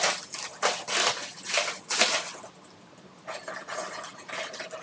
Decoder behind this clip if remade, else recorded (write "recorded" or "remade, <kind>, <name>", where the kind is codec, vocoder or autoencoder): recorded